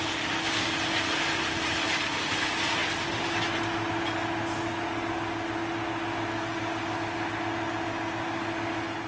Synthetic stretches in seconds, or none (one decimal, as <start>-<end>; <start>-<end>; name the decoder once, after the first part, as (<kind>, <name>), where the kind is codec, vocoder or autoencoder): none